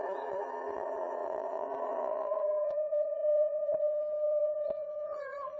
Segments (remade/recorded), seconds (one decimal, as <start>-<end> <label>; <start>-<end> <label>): 0.0-5.6 remade